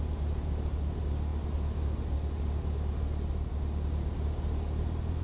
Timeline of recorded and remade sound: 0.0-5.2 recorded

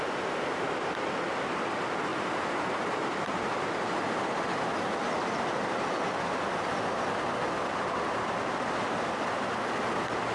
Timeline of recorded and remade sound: 0.0-10.3 recorded